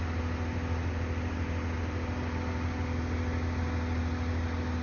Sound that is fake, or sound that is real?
real